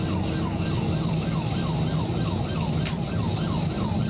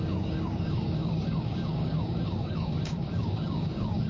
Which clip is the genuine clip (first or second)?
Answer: first